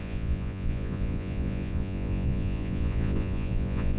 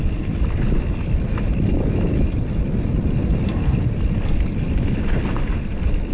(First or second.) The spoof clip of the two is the first